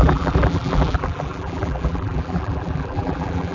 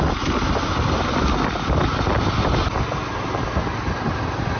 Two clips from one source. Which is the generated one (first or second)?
first